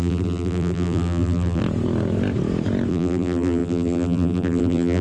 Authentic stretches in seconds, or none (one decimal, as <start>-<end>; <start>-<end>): 1.6-2.9